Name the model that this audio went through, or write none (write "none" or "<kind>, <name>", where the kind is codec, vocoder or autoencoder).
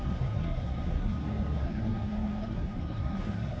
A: codec, SNAC